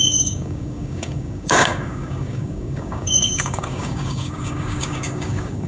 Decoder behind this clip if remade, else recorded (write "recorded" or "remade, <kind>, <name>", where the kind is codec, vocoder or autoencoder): remade, codec, DAC